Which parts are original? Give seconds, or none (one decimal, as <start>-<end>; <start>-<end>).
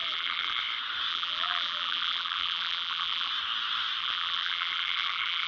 0.6-1.1; 3.3-4.0